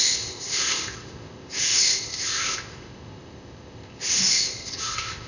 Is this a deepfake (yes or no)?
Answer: yes